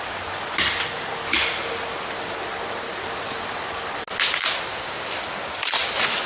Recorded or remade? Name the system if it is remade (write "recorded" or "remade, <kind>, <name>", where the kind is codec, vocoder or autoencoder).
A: recorded